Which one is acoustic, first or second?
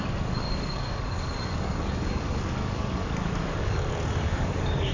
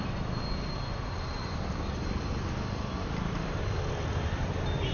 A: second